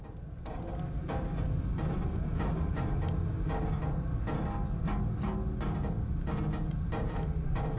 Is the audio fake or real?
real